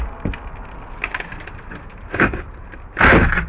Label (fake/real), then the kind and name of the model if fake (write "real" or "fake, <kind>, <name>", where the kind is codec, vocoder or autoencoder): real